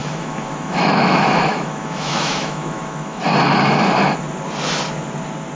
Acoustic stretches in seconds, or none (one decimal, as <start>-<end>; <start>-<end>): 3.2-5.6